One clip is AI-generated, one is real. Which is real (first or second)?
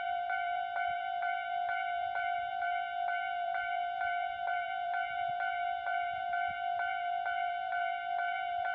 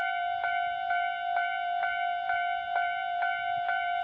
second